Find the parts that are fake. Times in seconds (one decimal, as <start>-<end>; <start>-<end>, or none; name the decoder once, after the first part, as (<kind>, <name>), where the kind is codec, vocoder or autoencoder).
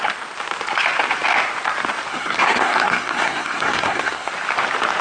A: 2.1-4.3 (codec, SNAC)